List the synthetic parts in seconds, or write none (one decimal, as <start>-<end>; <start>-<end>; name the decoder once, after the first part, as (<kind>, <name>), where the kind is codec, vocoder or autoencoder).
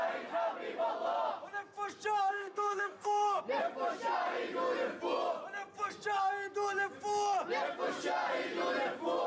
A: 2.3-3.4 (codec, DAC)